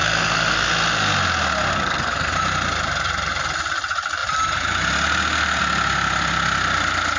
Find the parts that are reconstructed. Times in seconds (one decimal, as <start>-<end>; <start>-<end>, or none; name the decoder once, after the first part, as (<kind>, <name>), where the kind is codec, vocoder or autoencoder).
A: 0.0-0.7 (codec, SNAC); 1.7-2.3